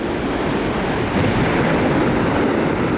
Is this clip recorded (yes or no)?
no